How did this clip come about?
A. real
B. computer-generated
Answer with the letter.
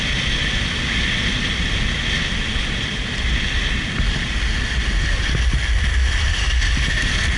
A